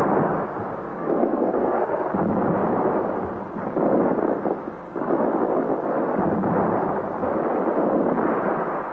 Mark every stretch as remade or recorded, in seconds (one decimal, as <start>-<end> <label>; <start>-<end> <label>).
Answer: 0.0-0.9 recorded; 0.9-2.1 remade; 2.1-8.9 recorded